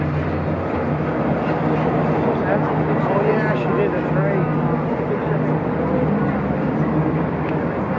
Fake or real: real